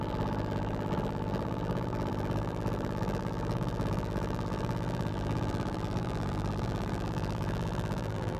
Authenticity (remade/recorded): remade